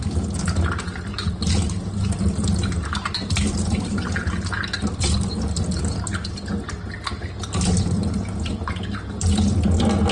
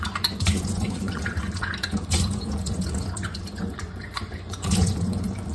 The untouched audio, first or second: first